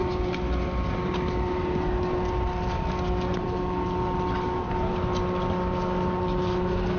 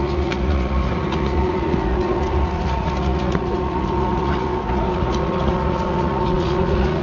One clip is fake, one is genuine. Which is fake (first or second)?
second